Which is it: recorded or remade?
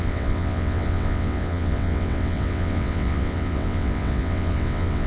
remade